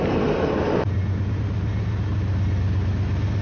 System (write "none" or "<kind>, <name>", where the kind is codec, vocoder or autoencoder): none